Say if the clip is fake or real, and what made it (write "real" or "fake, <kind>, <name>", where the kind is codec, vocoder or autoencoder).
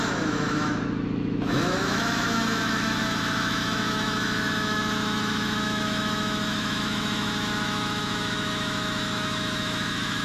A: fake, autoencoder, DAC-VAE